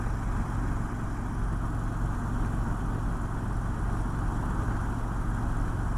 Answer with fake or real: real